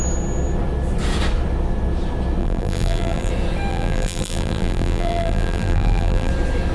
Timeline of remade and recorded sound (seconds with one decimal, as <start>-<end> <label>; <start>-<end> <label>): 0.0-2.4 recorded; 2.4-3.3 remade; 3.3-3.7 recorded; 3.7-6.3 remade; 6.3-6.7 recorded